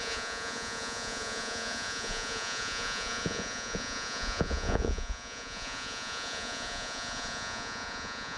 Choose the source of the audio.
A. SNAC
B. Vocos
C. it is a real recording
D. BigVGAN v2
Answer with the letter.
B